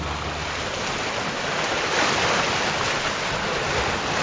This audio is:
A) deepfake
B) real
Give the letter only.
B